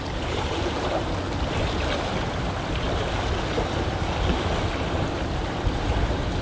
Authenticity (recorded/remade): recorded